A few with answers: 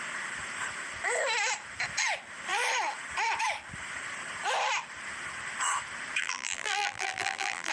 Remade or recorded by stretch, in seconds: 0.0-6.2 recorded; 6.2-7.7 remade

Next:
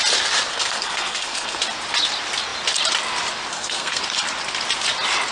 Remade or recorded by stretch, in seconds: 0.0-0.5 recorded; 0.5-1.6 remade; 1.6-3.5 recorded; 3.5-4.0 remade; 4.0-5.3 recorded

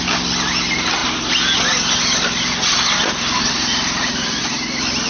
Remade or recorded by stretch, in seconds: 0.0-5.1 recorded